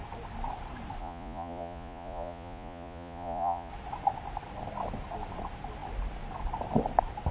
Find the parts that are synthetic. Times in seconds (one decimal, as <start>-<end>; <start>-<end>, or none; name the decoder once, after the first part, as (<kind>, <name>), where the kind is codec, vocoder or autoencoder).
1.0-3.7 (vocoder, Vocos)

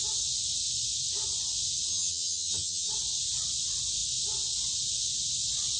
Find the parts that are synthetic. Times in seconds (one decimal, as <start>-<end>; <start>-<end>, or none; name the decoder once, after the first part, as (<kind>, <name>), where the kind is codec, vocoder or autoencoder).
1.9-2.9 (vocoder, HiFi-GAN)

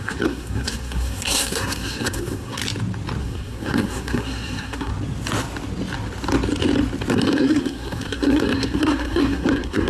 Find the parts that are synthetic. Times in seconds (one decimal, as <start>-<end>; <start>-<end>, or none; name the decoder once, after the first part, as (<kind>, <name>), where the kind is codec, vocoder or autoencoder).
0.0-2.6 (codec, SNAC); 3.2-4.9; 7.1-9.9

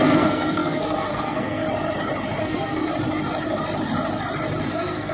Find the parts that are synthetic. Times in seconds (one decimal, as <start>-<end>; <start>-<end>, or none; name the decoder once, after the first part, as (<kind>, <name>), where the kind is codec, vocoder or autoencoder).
0.0-1.6 (codec, SNAC); 2.4-2.8; 4.6-5.1

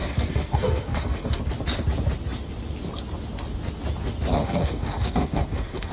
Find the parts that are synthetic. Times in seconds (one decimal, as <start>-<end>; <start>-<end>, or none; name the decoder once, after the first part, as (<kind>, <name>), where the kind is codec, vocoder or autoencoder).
0.0-1.4 (codec, SNAC); 4.4-5.9

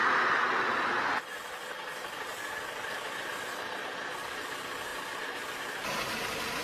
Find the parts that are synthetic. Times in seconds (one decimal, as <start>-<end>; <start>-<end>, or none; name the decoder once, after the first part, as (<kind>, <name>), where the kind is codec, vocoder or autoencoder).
none

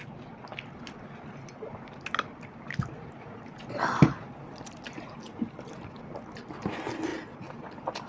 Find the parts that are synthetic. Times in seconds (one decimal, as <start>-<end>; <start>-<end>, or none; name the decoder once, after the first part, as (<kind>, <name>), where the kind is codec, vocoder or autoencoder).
none

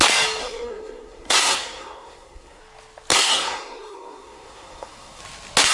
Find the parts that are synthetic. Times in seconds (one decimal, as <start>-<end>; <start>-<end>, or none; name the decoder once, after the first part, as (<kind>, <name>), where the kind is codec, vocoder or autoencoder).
0.4-2.6 (codec, SNAC); 3.1-5.2